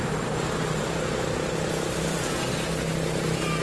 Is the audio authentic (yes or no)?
yes